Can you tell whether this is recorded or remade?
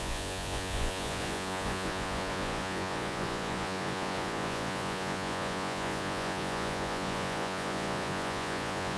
remade